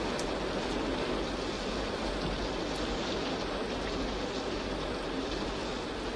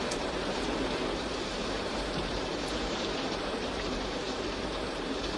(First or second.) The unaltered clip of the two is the first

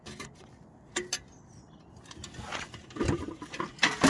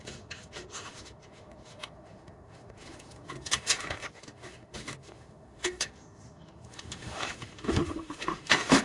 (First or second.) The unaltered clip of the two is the first